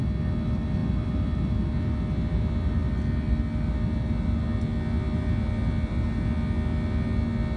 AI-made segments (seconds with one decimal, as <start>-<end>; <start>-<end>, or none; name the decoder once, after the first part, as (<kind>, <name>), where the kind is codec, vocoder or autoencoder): none